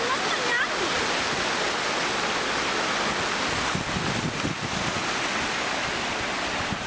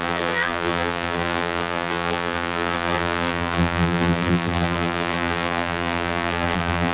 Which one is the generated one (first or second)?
second